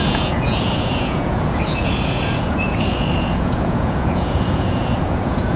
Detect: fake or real fake